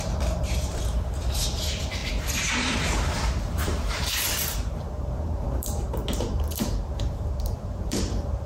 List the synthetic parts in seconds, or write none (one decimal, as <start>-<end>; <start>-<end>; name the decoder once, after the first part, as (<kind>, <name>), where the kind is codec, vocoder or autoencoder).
0.0-8.5 (vocoder, BigVGAN v2)